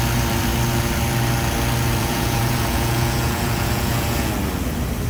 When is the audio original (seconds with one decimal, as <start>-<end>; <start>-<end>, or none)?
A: 0.0-2.0; 4.3-5.1